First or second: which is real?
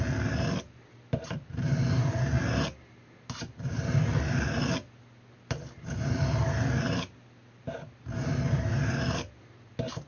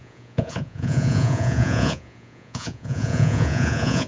first